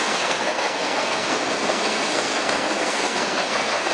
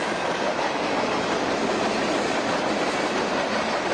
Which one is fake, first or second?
first